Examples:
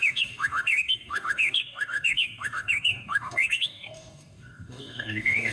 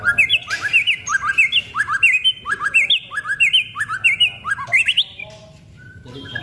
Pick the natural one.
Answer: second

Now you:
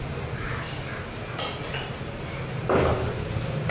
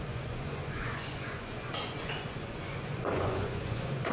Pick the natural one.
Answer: first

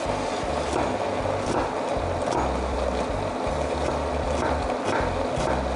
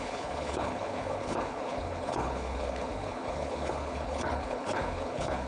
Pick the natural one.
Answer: first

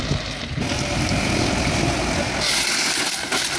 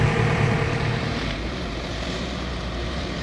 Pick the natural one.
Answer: first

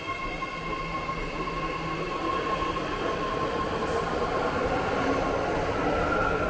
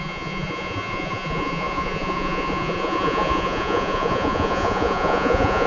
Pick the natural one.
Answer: first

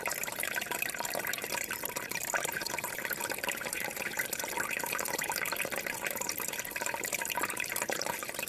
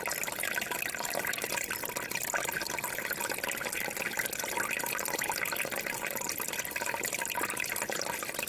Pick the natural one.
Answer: second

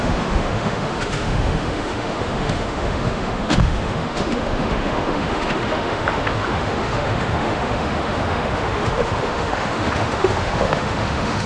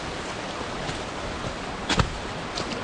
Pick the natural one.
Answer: second